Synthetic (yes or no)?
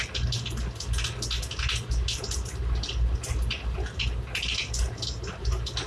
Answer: no